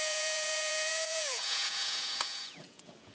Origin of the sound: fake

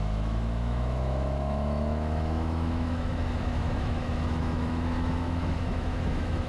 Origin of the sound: fake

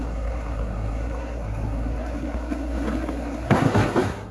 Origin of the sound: fake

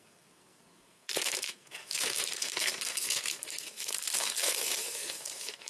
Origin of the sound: fake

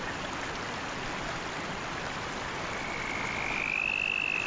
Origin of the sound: real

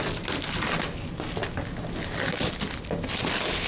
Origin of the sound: real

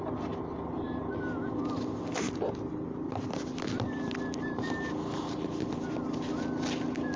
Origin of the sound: real